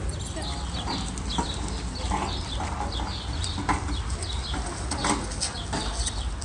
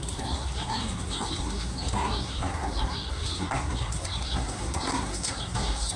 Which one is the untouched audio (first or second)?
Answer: first